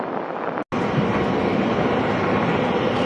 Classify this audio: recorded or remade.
recorded